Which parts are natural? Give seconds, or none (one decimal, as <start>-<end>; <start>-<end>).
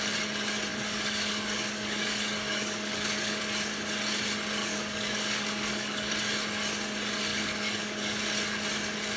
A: 0.0-0.7; 3.4-4.6; 6.1-7.3; 8.2-9.2